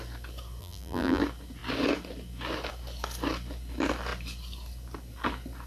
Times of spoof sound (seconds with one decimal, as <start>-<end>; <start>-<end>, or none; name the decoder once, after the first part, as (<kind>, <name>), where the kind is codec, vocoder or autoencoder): 0.6-1.2 (vocoder, BigVGAN v2)